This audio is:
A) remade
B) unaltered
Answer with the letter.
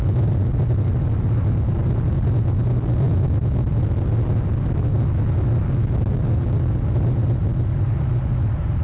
B